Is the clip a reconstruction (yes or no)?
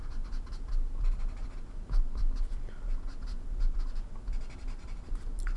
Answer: yes